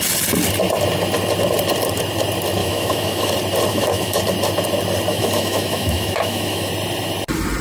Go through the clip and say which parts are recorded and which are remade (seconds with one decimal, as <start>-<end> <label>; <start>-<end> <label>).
0.0-2.6 recorded; 2.6-3.3 remade; 3.3-3.7 recorded; 3.7-4.2 remade; 4.2-5.1 recorded; 5.1-6.7 remade; 6.7-7.6 recorded